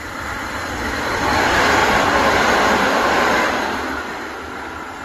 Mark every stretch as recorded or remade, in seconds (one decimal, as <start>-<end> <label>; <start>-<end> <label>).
0.0-0.4 remade; 0.4-1.1 recorded; 1.1-5.0 remade